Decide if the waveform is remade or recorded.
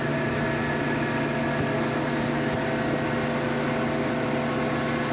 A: recorded